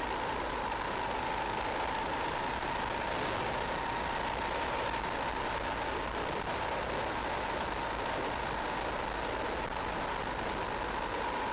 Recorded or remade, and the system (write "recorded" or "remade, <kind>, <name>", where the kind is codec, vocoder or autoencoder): recorded